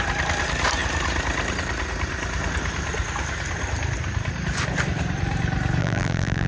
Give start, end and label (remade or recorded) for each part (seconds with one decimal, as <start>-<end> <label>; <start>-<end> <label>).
0.0-5.8 recorded; 5.8-6.5 remade